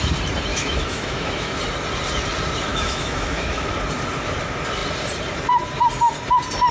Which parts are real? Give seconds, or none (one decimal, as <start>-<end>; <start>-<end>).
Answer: 0.0-0.5; 1.6-2.7; 3.7-6.7